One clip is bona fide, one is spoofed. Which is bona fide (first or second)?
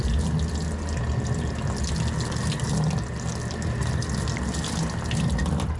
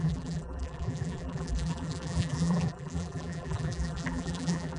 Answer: first